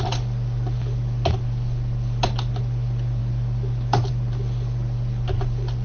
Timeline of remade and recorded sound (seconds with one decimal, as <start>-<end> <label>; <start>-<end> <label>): 0.0-5.8 recorded